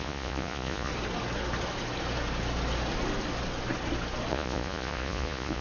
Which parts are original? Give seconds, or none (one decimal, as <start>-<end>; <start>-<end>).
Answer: 0.9-4.3